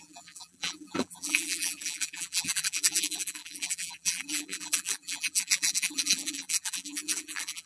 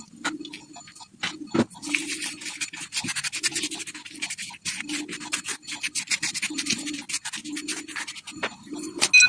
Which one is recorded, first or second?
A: second